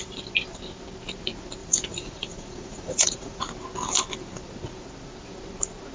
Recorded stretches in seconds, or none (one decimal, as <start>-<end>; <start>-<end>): 0.0-1.6; 3.4-5.9